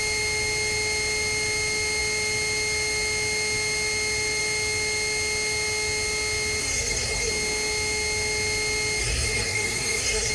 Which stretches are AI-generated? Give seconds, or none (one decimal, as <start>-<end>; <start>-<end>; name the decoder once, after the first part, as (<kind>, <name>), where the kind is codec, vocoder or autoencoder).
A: 6.6-7.3 (codec, SNAC); 9.0-10.3